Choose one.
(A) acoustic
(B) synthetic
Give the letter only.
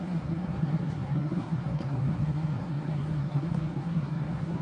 B